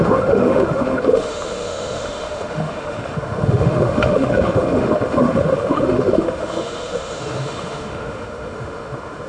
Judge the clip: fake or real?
fake